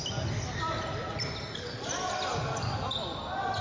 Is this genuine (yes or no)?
yes